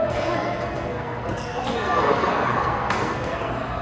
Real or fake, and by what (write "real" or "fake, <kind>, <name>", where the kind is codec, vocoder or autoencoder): fake, codec, SNAC